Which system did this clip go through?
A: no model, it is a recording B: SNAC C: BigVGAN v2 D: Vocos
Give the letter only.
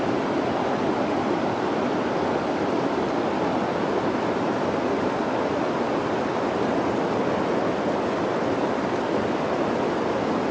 A